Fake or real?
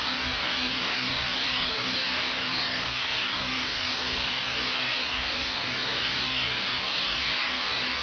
fake